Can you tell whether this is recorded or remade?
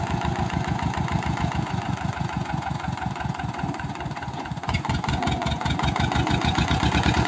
remade